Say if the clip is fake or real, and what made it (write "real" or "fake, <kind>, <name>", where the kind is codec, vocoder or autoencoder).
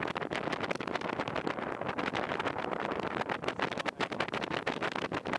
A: real